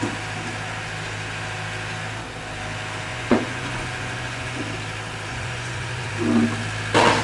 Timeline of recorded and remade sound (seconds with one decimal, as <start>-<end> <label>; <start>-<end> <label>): 0.0-3.1 recorded; 3.1-4.6 remade; 4.6-5.3 recorded; 5.3-6.1 remade; 6.1-7.2 recorded